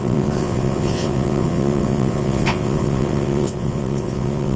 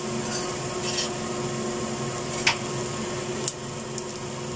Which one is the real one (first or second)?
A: second